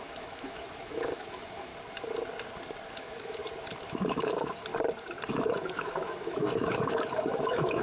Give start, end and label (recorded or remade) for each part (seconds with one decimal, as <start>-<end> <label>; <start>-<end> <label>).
0.0-1.7 remade; 1.7-2.9 recorded; 2.9-3.4 remade; 3.4-3.9 recorded; 3.9-4.7 remade; 4.7-5.3 recorded; 5.3-7.8 remade